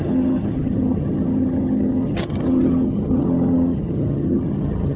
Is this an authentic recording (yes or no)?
no